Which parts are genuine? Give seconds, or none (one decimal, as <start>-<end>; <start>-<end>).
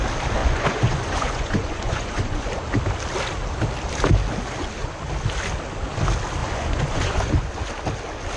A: 0.0-0.4; 2.5-6.4; 7.7-8.4